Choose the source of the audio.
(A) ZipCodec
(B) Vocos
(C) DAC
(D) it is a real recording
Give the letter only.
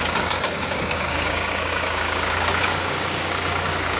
C